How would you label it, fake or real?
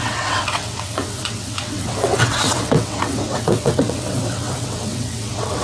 fake